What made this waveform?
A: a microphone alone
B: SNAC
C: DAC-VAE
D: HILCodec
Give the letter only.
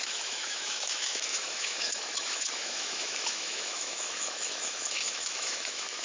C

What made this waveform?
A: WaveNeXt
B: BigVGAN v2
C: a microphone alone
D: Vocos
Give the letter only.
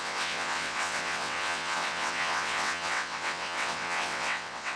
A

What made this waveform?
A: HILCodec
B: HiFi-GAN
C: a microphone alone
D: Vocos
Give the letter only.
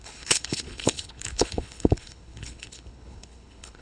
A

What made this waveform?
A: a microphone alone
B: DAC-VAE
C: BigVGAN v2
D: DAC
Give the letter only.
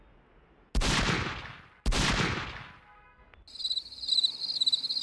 A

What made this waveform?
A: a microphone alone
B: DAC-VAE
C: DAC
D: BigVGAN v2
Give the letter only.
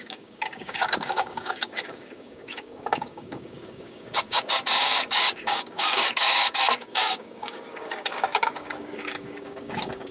C